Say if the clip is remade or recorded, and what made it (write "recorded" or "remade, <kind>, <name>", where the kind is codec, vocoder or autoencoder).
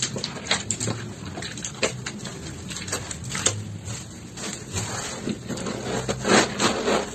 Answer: recorded